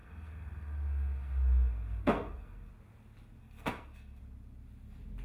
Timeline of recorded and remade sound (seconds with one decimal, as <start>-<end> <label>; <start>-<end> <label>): 0.0-2.7 remade; 2.7-3.4 recorded; 3.4-4.2 remade; 4.2-5.2 recorded